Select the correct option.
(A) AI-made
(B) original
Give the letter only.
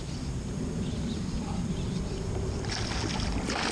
B